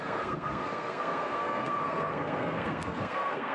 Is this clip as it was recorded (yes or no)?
no